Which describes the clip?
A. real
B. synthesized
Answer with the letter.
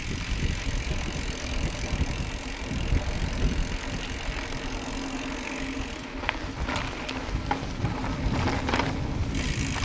A